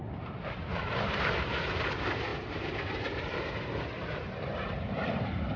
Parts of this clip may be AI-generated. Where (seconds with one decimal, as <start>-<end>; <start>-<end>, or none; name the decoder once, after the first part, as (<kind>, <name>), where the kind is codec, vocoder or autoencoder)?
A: 0.0-5.6 (vocoder, BigVGAN v2)